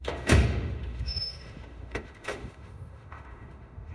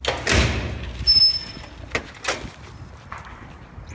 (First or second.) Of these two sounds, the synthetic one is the first